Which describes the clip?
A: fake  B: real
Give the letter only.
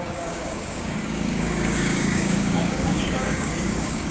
A